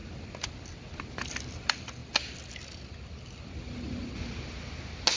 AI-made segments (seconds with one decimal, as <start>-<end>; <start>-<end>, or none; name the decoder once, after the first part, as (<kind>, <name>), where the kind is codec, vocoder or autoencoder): none